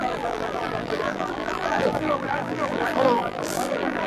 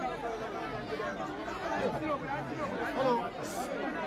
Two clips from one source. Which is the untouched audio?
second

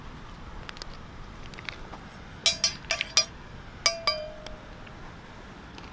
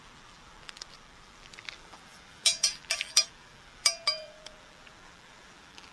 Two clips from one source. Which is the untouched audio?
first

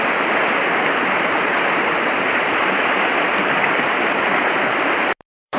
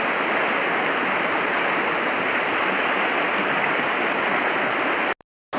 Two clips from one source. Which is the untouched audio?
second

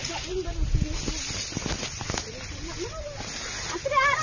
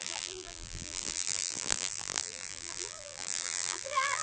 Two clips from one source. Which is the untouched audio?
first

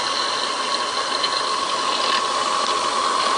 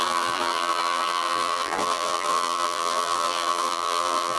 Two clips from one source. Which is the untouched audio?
first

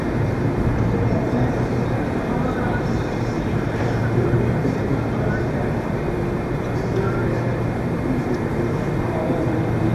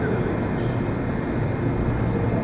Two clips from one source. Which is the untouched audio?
second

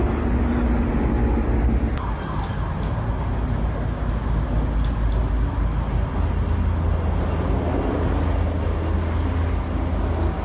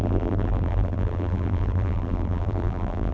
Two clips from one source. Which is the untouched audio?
first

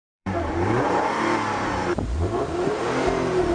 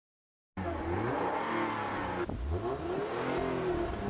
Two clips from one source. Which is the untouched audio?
second